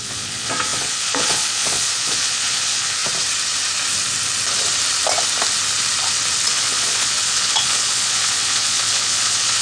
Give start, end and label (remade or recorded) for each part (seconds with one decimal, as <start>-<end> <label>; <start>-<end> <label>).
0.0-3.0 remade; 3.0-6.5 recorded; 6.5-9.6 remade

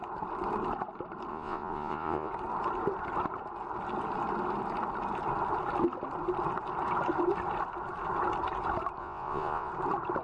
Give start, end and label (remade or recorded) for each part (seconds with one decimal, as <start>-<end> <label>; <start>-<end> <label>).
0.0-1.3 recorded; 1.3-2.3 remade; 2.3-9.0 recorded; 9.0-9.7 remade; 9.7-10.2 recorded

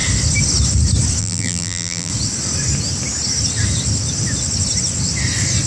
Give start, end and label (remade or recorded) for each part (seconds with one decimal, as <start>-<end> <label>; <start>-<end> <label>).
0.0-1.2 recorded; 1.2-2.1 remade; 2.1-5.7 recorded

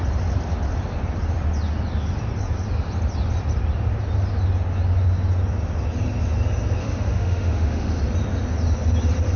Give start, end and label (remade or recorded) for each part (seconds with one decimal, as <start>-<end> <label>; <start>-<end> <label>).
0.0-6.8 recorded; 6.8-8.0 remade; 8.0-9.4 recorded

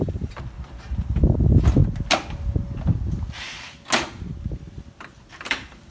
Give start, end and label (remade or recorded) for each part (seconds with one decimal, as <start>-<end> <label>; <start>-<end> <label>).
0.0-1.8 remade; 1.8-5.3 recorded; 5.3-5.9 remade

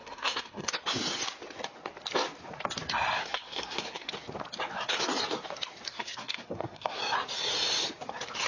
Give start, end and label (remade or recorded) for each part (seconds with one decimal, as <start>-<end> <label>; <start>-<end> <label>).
0.0-0.7 remade; 0.7-3.2 recorded; 3.2-4.1 remade; 4.1-5.9 recorded; 5.9-7.0 remade; 7.0-8.5 recorded